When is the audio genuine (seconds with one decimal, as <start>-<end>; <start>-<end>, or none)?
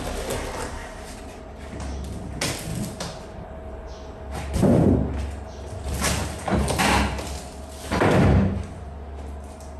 0.0-9.8